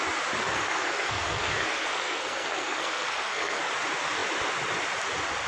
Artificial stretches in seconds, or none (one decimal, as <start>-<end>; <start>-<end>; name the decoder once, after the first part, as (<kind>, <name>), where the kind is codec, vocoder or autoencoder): 0.4-3.7 (codec, SNAC)